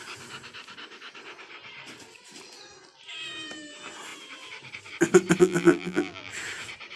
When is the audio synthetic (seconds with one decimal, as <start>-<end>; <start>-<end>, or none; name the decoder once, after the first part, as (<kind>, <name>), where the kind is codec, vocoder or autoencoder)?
5.4-6.3 (vocoder, BigVGAN v2)